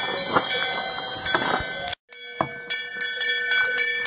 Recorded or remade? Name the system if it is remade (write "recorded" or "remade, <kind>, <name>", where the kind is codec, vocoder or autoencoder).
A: recorded